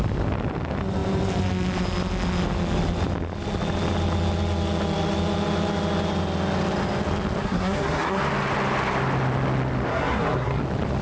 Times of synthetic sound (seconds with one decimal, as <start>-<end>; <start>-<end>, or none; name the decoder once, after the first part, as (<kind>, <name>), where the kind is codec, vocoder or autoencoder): 7.4-8.2 (codec, SNAC); 9.9-10.6